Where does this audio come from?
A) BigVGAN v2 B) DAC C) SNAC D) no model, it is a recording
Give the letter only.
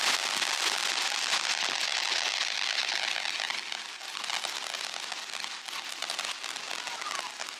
D